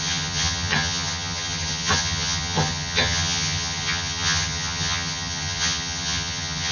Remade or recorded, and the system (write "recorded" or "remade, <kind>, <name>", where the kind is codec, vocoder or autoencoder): remade, vocoder, HiFi-GAN